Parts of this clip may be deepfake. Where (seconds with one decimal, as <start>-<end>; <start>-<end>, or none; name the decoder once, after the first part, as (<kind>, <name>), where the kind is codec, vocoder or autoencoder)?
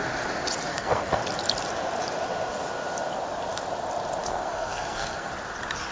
0.7-1.2 (codec, SNAC); 4.2-5.3